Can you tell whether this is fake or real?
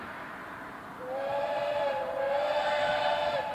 fake